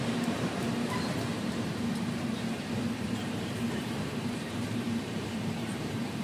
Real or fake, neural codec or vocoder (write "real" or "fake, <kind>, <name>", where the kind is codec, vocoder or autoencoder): fake, vocoder, BigVGAN v2